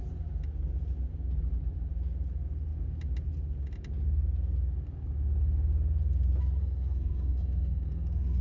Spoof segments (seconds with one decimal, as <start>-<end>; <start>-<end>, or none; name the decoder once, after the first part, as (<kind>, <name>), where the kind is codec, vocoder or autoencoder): 6.6-8.4 (codec, SNAC)